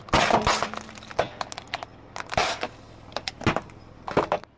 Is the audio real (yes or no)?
yes